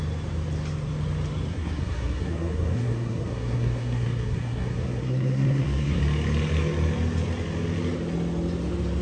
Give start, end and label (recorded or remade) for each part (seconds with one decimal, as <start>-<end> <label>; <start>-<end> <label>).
0.0-1.5 recorded; 1.5-6.0 remade; 6.0-9.0 recorded

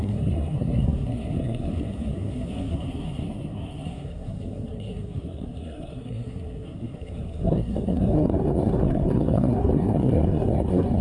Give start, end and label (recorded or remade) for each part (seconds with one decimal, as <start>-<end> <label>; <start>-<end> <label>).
0.0-11.0 remade

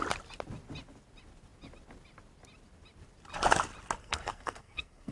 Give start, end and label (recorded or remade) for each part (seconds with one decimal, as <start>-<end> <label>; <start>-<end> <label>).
0.0-4.0 recorded; 4.0-5.1 remade